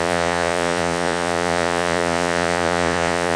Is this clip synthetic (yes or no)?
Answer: yes